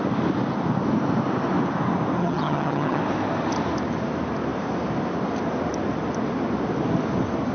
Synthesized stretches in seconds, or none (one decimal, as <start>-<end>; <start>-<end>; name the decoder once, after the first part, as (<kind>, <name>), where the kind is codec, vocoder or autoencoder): 2.2-3.0 (vocoder, HiFi-GAN)